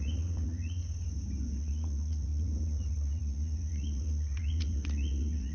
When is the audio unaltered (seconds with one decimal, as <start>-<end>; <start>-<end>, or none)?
0.8-1.6